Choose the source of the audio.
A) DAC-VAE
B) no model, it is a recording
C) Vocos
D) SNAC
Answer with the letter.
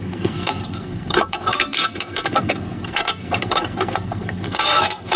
D